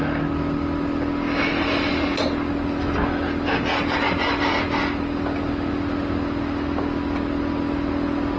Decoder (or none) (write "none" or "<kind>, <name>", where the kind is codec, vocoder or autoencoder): none